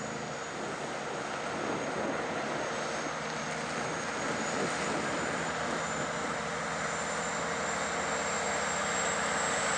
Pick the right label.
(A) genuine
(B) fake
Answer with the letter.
A